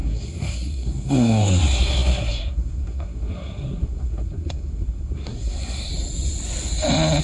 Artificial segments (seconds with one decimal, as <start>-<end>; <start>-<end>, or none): 0.0-5.9